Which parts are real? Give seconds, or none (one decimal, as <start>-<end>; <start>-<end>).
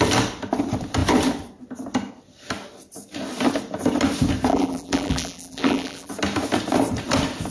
0.0-4.5; 6.1-7.5